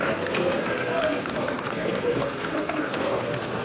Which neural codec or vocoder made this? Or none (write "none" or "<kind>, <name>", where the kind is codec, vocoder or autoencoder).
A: codec, SNAC